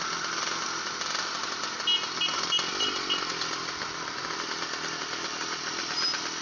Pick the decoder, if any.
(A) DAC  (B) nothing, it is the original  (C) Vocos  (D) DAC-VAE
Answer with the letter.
B